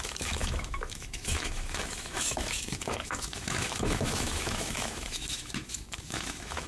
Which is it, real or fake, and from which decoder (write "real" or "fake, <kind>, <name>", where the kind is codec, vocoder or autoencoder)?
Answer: fake, autoencoder, DAC-VAE